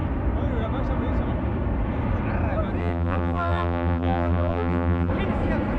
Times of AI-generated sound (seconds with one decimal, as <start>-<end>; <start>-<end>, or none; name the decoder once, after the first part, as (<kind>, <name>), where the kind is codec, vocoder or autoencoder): 2.8-5.1 (vocoder, BigVGAN v2)